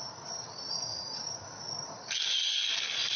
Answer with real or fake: real